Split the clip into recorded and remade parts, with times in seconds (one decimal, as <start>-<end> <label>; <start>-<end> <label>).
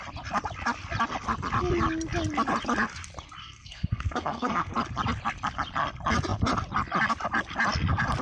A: 0.0-3.4 recorded; 3.4-4.7 remade; 4.7-8.2 recorded